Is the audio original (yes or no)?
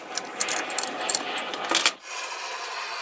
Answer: yes